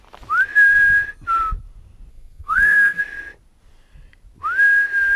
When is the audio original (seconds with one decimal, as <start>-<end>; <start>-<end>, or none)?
0.0-2.1; 3.0-5.2